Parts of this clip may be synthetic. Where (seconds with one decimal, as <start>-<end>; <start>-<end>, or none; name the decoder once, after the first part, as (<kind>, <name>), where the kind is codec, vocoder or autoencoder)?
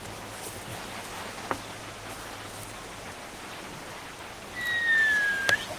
none